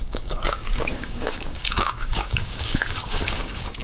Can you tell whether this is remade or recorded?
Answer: remade